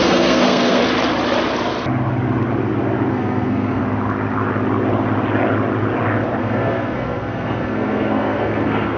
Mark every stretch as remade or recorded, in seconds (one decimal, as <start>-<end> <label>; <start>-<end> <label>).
0.0-0.8 remade; 0.8-3.1 recorded; 3.1-3.8 remade; 3.8-6.4 recorded; 6.4-9.0 remade